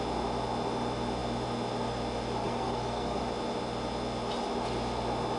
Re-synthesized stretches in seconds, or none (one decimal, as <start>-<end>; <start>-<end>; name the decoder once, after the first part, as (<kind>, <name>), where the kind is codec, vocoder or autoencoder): 2.4-3.2 (codec, SNAC)